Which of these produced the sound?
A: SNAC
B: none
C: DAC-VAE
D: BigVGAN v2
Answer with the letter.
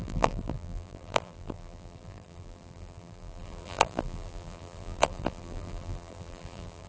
D